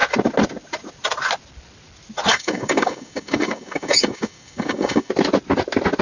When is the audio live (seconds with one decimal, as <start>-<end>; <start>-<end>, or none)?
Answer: 0.0-2.3; 5.1-6.0